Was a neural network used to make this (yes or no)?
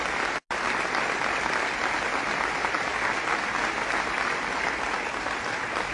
no